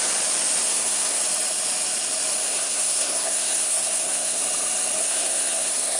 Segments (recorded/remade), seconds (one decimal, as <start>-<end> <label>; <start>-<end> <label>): 0.0-0.7 recorded; 0.7-1.2 remade; 1.2-2.5 recorded; 2.5-4.4 remade; 4.4-5.0 recorded; 5.0-6.0 remade